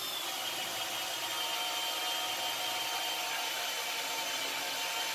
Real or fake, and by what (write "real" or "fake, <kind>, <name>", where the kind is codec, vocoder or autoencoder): real